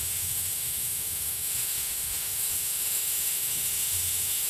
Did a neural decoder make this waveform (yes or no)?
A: yes